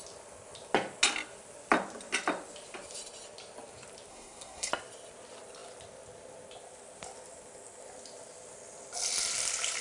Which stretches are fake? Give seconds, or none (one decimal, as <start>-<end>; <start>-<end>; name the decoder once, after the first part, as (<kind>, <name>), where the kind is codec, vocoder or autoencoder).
4.1-4.7 (codec, SNAC)